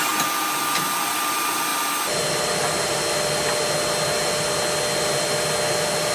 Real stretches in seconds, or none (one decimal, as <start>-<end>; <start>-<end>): 0.0-6.1

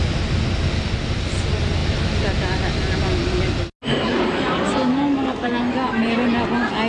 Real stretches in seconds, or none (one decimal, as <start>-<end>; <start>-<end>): 0.0-4.9; 5.6-6.9

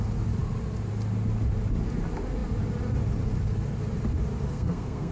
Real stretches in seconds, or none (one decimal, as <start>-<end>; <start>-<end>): 0.0-4.5

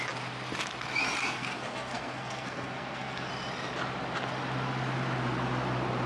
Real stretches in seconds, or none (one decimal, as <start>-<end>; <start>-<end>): 0.0-1.2; 3.3-6.1

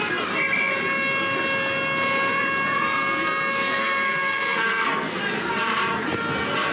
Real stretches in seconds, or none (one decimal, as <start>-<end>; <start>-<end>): 0.0-3.8; 5.2-6.7

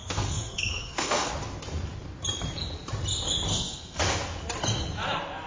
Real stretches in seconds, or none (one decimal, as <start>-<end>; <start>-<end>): 1.3-3.5; 4.0-5.5

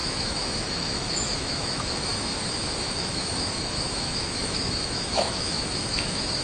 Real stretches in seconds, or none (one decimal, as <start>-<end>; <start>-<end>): none

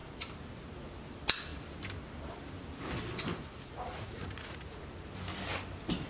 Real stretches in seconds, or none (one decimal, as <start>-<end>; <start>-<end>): 0.0-3.3; 4.8-6.1